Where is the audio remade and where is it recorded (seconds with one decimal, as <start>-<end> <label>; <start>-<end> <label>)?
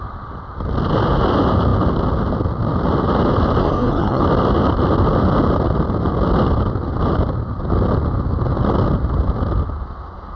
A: 0.0-3.6 recorded; 3.6-4.2 remade; 4.2-10.4 recorded